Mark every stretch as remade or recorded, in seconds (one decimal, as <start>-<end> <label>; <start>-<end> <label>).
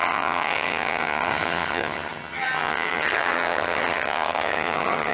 0.0-5.1 remade